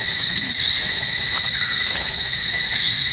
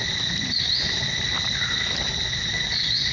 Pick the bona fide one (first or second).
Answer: second